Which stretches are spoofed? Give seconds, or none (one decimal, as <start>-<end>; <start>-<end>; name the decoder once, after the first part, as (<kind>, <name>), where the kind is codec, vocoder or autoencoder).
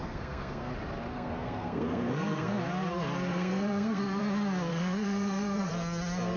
0.0-0.7 (codec, SNAC); 1.1-2.6; 3.3-4.2; 4.7-5.7